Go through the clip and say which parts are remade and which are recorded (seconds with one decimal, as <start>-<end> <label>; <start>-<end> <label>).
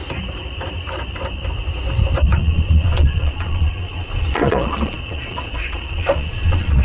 0.0-2.3 recorded; 2.3-6.8 remade